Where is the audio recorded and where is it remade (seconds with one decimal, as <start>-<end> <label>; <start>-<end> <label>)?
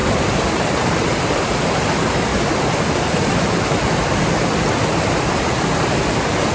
0.0-1.4 remade; 1.4-2.3 recorded; 2.3-3.8 remade; 3.8-6.5 recorded